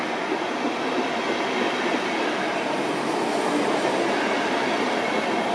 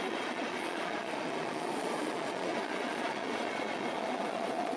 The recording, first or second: first